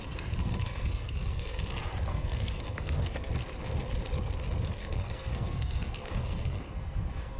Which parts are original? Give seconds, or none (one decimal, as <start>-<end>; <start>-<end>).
0.0-0.4; 1.6-2.1; 3.3-4.8